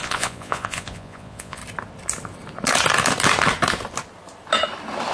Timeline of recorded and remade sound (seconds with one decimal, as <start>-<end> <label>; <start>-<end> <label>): 0.0-1.6 remade; 1.6-5.1 recorded